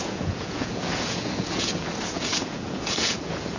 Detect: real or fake fake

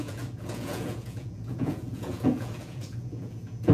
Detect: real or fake fake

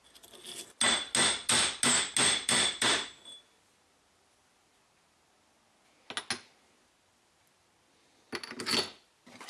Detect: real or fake real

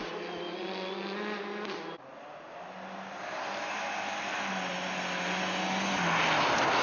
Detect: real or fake real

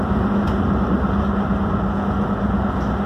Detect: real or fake real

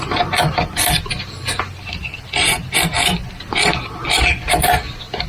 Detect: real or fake real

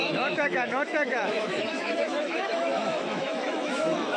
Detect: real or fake fake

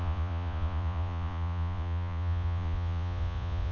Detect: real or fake fake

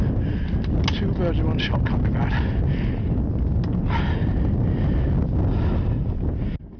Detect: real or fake real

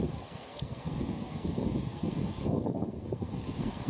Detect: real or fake fake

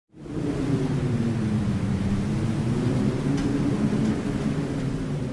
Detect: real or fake real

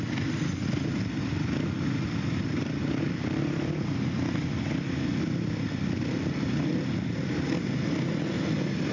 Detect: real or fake real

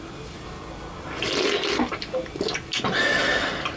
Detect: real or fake real